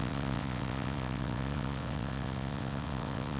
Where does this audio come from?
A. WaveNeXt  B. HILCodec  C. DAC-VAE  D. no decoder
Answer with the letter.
A